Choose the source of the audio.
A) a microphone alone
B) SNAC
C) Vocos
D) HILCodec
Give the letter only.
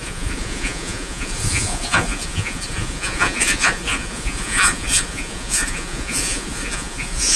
C